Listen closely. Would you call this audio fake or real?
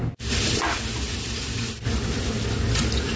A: real